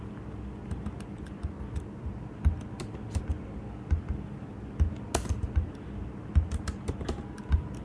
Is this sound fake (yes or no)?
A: no